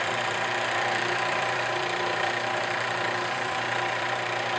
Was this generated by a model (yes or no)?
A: yes